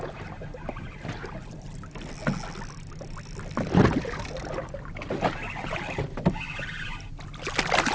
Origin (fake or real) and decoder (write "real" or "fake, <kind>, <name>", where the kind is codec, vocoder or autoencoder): real